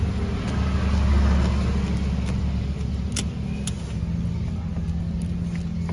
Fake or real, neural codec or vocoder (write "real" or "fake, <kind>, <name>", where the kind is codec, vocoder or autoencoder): real